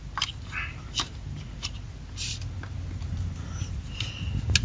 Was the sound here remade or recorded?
recorded